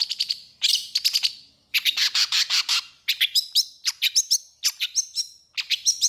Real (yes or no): yes